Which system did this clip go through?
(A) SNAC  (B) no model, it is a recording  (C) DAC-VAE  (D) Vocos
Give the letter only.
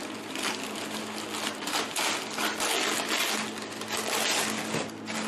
B